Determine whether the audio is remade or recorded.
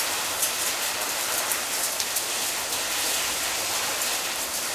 recorded